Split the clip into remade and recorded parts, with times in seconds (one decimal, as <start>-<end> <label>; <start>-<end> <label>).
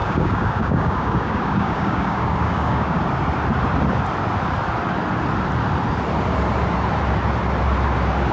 0.0-3.0 remade; 3.0-8.3 recorded